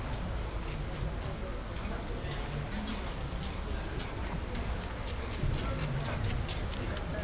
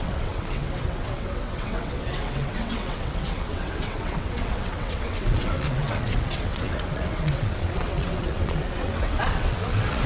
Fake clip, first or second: second